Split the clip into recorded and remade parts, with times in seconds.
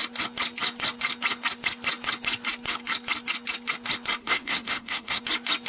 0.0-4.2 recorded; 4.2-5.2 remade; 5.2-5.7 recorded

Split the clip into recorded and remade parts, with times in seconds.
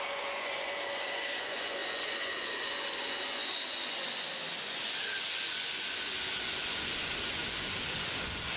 0.0-8.6 remade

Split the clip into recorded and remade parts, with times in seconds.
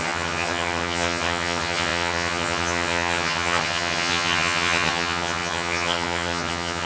0.0-6.9 remade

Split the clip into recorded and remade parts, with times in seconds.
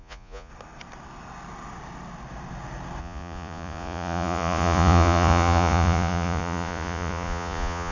0.0-0.5 remade; 0.5-3.0 recorded; 3.0-7.9 remade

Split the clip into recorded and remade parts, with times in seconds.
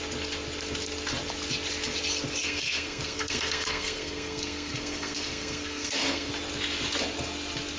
0.0-2.4 recorded; 2.4-6.3 remade; 6.3-7.8 recorded